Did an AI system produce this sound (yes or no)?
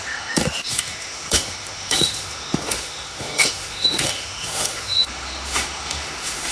yes